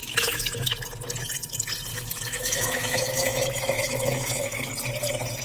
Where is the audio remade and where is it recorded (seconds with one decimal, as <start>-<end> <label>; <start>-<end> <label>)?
0.0-0.7 remade; 0.7-1.9 recorded; 1.9-4.7 remade; 4.7-5.4 recorded

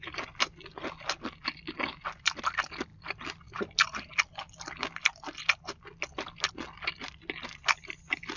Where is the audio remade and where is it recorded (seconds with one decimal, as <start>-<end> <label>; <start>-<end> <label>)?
0.0-8.4 recorded

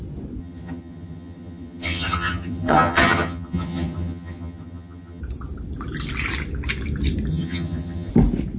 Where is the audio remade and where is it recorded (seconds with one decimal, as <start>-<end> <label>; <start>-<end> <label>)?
0.0-0.4 recorded; 0.4-5.2 remade; 5.2-7.3 recorded; 7.3-8.1 remade; 8.1-8.6 recorded

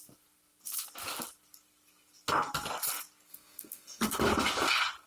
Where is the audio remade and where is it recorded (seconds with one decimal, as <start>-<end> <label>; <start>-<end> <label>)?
0.0-3.3 recorded; 3.3-4.2 remade; 4.2-5.1 recorded

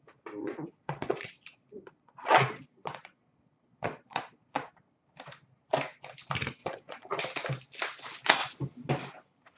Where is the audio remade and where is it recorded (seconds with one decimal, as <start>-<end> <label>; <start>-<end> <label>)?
0.0-0.4 recorded; 0.4-4.7 remade; 4.7-6.6 recorded; 6.6-7.2 remade; 7.2-9.6 recorded

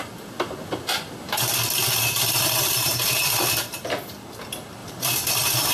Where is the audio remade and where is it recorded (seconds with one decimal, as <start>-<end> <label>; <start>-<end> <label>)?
0.0-4.8 recorded; 4.8-5.3 remade; 5.3-5.7 recorded

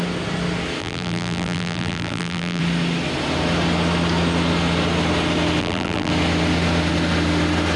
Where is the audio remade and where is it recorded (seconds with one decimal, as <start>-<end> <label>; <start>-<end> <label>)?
0.0-0.8 recorded; 0.8-2.6 remade; 2.6-5.6 recorded; 5.6-6.1 remade; 6.1-7.8 recorded

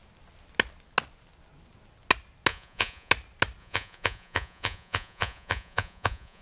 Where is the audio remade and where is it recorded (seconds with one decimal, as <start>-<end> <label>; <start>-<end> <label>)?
0.0-2.5 recorded; 2.5-3.1 remade; 3.1-3.6 recorded; 3.6-6.4 remade